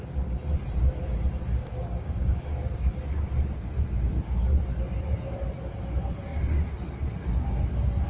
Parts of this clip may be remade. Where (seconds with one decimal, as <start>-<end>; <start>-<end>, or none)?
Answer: 1.6-2.9

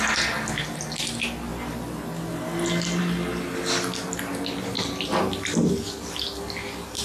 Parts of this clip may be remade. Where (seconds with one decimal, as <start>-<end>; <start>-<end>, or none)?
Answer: none

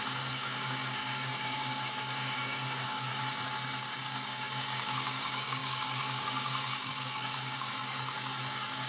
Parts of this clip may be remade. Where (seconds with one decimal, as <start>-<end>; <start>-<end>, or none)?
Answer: 0.0-3.1; 4.0-8.9